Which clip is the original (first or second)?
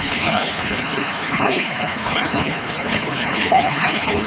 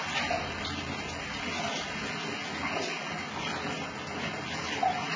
second